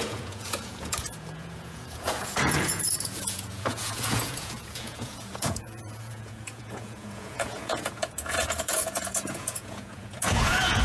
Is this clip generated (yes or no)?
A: yes